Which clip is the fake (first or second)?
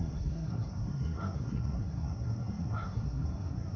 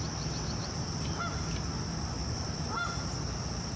first